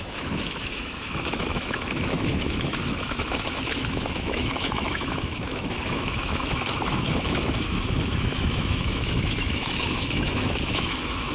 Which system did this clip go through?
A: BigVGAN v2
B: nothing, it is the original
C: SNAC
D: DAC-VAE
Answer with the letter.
D